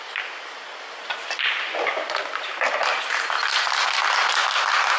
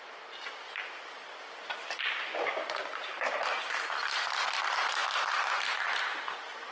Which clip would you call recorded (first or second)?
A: first